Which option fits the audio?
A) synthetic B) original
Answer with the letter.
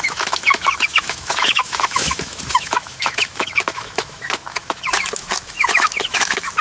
A